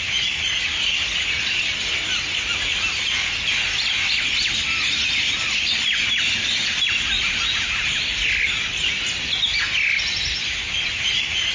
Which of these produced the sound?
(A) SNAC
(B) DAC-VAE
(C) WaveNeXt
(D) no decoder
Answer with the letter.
D